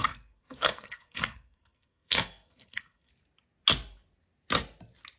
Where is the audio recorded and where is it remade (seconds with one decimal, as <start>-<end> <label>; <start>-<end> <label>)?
0.0-3.1 remade; 3.1-5.2 recorded